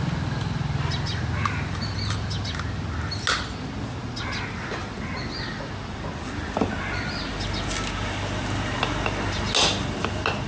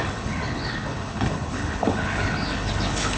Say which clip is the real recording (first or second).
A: first